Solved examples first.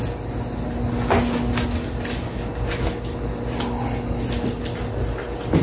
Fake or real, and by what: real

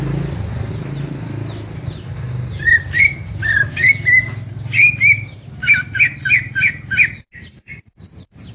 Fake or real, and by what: real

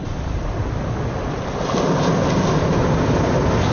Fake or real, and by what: real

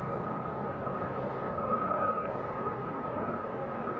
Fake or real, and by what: fake, codec, DAC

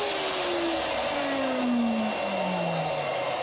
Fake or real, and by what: real